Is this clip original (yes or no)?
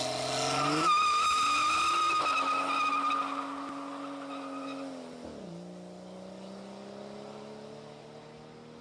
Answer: yes